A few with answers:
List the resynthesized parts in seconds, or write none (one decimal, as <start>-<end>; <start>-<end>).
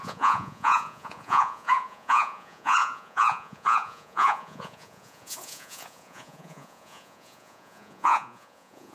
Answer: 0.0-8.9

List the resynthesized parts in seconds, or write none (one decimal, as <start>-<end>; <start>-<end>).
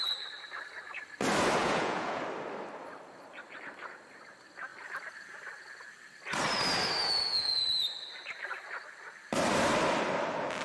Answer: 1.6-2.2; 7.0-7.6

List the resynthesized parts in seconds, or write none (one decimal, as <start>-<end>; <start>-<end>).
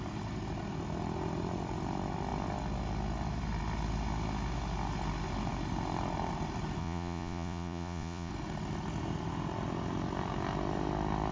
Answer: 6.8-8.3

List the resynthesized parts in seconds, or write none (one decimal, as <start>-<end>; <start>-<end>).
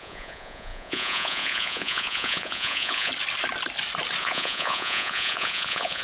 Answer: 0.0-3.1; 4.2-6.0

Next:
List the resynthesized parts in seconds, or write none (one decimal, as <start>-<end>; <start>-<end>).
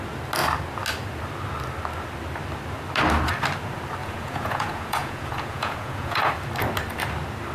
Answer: 4.0-6.3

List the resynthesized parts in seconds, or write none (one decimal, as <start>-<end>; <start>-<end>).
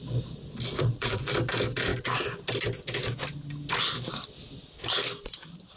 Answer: 0.7-1.3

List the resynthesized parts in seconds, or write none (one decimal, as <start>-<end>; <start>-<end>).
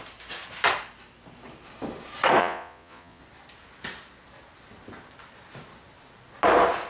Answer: 2.4-3.2